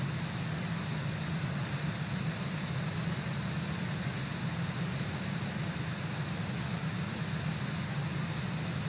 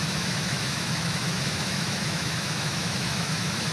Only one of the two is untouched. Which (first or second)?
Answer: first